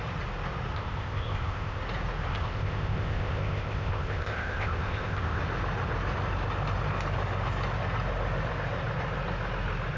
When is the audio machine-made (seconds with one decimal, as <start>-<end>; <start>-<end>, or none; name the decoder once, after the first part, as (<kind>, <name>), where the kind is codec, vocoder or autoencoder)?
0.7-1.8 (codec, ZipCodec); 2.3-5.4